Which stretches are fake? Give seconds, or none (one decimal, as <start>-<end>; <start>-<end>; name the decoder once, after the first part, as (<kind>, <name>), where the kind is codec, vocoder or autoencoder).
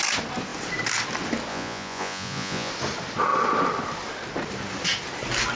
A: 1.5-2.7 (vocoder, Vocos)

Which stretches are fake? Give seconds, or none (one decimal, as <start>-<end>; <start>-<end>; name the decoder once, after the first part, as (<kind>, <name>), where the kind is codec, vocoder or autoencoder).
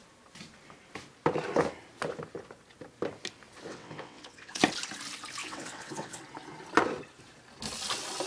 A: 3.7-4.6 (vocoder, WaveNeXt); 5.4-6.2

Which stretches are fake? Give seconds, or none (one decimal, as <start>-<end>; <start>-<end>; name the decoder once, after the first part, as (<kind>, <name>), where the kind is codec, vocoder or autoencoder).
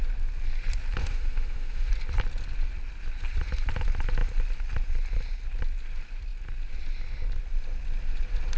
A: 1.0-1.9 (autoencoder, DAC-VAE)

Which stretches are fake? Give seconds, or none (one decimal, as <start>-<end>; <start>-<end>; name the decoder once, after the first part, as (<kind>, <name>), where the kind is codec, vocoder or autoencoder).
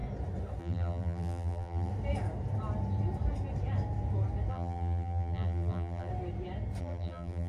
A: 0.6-1.9 (vocoder, BigVGAN v2); 4.5-6.1; 6.8-7.5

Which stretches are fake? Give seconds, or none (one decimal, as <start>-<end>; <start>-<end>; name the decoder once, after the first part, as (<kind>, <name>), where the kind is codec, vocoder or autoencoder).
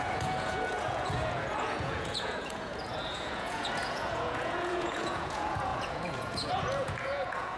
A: 0.0-7.6 (vocoder, Vocos)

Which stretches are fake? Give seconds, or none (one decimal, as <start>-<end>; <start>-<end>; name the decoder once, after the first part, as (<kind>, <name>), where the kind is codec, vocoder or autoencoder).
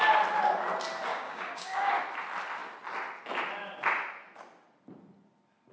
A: 1.1-1.9 (codec, DAC)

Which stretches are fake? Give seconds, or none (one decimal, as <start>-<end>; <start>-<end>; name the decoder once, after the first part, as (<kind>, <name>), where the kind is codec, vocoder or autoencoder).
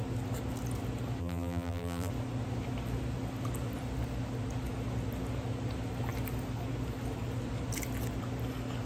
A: 1.2-2.1 (vocoder, BigVGAN v2)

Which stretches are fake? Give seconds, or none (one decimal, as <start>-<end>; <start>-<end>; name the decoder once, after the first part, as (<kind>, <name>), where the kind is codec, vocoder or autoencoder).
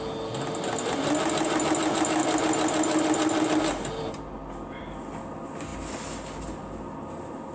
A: none